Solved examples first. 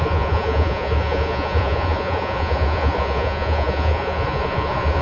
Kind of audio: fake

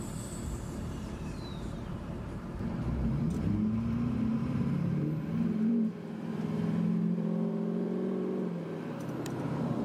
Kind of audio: fake